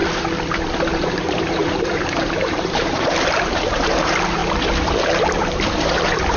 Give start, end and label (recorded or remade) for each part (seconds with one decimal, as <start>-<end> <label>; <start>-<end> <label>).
0.0-1.0 recorded; 1.0-4.4 remade; 4.4-5.0 recorded; 5.0-6.4 remade